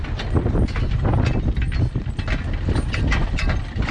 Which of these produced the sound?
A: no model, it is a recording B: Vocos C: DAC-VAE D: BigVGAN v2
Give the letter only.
A